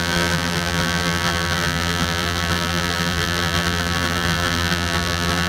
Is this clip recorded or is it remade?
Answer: remade